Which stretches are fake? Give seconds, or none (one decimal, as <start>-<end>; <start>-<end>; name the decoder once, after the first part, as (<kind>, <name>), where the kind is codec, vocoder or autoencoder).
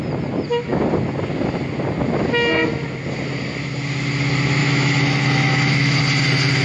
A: 4.6-6.0 (autoencoder, DAC-VAE)